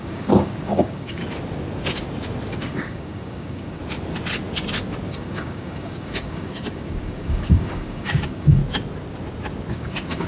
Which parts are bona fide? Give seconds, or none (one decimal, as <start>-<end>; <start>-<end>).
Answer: 1.2-2.6; 3.8-5.1; 8.6-9.7